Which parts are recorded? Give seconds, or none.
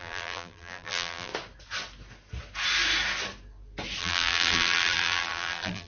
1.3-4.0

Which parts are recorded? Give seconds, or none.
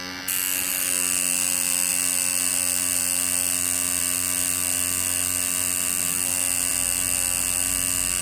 0.0-8.2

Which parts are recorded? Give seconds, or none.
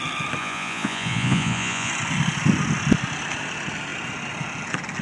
0.0-0.4; 1.9-5.0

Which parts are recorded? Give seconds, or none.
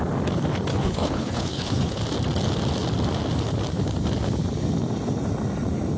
0.0-0.7; 2.0-6.0